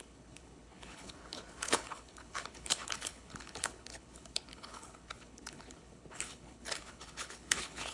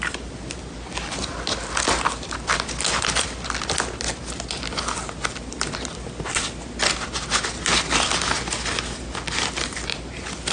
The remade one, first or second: first